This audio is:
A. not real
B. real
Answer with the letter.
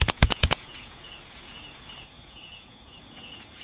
A